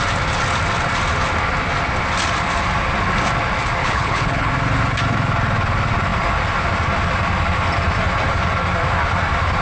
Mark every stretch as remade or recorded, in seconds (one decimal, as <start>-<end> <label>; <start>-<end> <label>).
0.0-3.8 recorded; 3.8-4.5 remade; 4.5-9.6 recorded